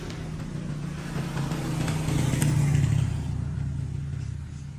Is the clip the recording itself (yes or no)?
yes